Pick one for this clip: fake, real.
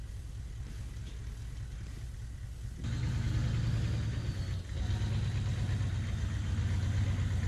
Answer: real